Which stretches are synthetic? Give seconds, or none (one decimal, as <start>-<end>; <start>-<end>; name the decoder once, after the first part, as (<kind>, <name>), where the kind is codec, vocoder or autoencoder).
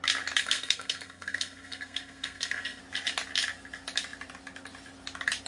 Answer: 0.4-2.8 (codec, SNAC)